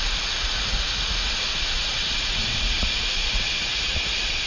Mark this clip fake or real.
fake